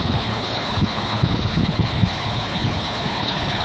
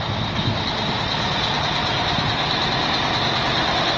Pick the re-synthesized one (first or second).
first